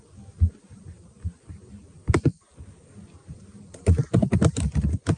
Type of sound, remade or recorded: recorded